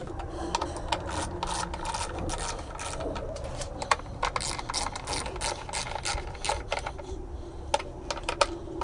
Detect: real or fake real